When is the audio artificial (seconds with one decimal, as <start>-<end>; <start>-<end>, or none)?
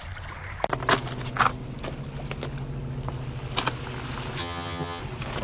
4.4-5.0